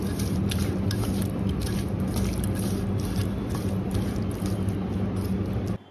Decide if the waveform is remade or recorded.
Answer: recorded